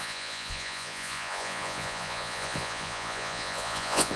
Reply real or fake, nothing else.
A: fake